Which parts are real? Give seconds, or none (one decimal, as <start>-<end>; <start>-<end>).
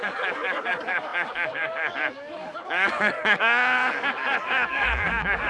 none